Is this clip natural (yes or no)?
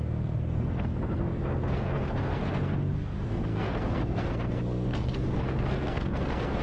no